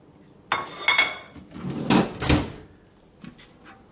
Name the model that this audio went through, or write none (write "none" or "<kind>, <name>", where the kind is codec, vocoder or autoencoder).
none